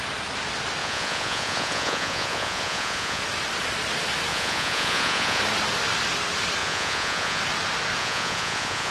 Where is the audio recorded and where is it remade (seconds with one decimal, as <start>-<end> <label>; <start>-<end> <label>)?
0.0-0.8 recorded; 0.8-3.2 remade; 3.2-4.3 recorded; 4.3-5.4 remade; 5.4-6.6 recorded; 6.6-7.4 remade; 7.4-8.0 recorded; 8.0-8.9 remade